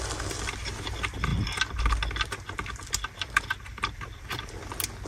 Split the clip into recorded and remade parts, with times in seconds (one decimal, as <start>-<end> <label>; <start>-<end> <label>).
0.0-5.1 recorded